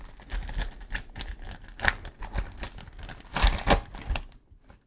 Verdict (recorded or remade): recorded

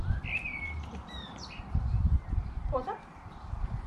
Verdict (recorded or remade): remade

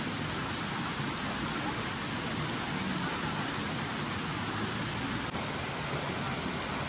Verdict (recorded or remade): recorded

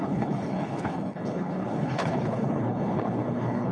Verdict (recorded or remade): remade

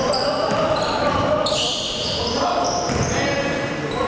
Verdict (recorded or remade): recorded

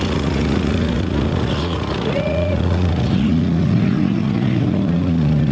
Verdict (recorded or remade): remade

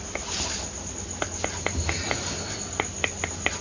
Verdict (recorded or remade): recorded